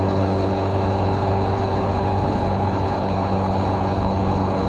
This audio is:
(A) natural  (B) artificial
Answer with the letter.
B